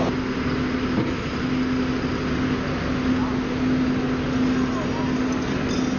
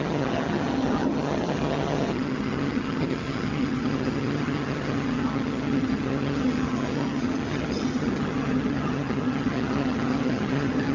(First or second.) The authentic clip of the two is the first